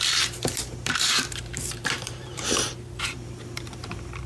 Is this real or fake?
fake